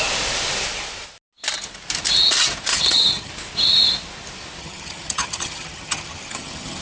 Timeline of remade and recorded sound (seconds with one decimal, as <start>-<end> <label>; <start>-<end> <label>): 0.0-2.7 recorded; 2.7-3.3 remade; 3.3-4.6 recorded; 4.6-6.8 remade

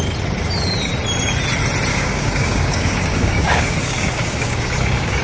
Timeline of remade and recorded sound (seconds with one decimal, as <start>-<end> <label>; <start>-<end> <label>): 0.0-1.9 recorded; 1.9-5.2 remade

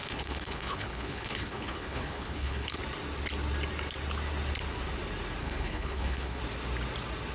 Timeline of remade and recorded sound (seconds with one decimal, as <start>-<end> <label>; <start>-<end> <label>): 0.0-2.8 remade; 2.8-5.4 recorded; 5.4-6.4 remade; 6.4-7.3 recorded